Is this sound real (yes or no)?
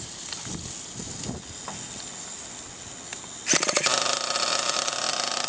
yes